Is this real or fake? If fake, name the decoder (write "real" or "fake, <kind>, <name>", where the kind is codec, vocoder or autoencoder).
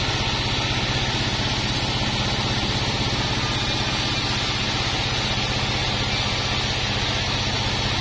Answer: real